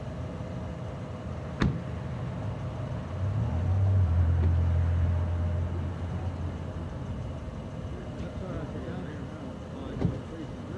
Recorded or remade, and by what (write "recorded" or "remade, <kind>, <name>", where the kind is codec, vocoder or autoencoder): recorded